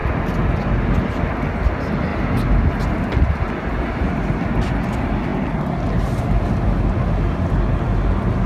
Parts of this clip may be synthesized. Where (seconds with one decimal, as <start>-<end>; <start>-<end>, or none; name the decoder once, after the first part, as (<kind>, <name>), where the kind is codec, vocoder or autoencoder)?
none

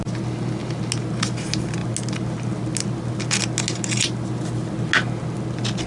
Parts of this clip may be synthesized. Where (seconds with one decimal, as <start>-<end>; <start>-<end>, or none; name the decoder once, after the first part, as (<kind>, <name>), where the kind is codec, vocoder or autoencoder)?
none

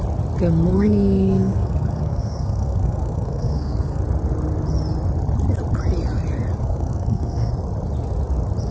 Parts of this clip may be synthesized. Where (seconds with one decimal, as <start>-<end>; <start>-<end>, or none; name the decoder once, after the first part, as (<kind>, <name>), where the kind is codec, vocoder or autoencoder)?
0.7-4.0 (codec, SNAC); 6.6-7.5

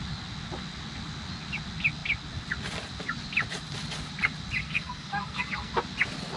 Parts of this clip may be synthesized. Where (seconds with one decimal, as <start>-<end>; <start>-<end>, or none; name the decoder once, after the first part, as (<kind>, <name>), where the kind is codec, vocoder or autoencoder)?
4.6-5.7 (codec, SNAC)

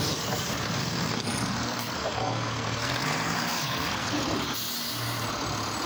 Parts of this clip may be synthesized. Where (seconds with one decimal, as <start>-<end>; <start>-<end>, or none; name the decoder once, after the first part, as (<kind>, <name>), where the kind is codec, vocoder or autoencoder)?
0.8-4.2 (codec, SNAC)

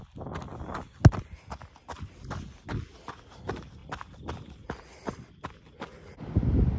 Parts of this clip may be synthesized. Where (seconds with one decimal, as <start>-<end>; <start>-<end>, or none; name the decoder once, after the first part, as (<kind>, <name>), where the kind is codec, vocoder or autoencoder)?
none

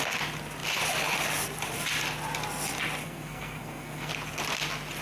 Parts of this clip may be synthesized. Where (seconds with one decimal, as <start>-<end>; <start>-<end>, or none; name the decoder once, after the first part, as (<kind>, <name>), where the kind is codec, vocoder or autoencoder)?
3.0-4.1 (codec, SNAC)

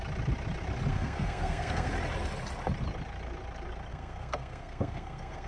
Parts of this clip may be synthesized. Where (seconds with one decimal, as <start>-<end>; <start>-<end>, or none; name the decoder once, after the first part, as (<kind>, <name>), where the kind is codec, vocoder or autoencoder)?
0.9-1.9 (codec, SNAC); 3.9-5.5